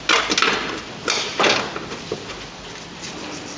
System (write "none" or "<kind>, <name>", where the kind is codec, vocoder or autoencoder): none